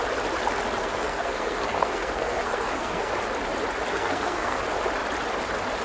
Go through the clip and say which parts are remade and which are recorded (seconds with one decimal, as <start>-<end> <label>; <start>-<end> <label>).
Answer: 0.0-0.8 recorded; 0.8-3.1 remade; 3.1-3.9 recorded; 3.9-4.6 remade; 4.6-5.8 recorded